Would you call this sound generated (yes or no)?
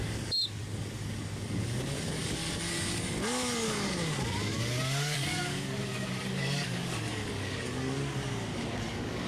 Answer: yes